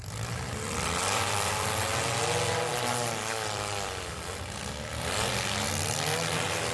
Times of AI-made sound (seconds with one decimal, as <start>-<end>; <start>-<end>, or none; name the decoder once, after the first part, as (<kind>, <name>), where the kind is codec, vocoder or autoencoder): 3.3-4.3 (vocoder, BigVGAN v2)